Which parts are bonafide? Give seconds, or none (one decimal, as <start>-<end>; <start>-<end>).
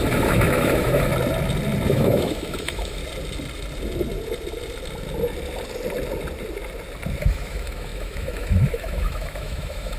1.1-1.9; 3.0-7.2